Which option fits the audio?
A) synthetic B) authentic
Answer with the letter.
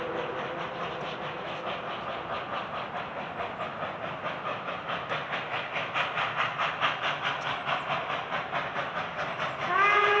B